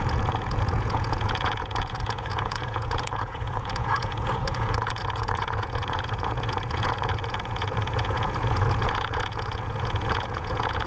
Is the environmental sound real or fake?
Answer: fake